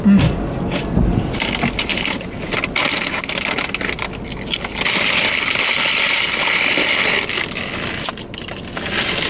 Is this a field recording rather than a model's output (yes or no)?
yes